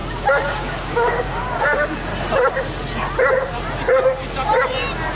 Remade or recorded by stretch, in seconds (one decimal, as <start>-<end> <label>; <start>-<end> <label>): 0.0-0.5 recorded; 0.5-2.1 remade; 2.1-5.2 recorded